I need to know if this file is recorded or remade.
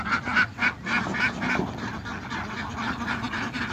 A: recorded